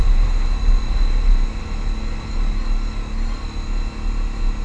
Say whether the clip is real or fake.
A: real